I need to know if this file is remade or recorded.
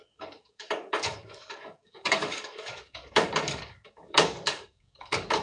remade